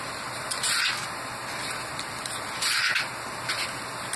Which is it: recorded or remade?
recorded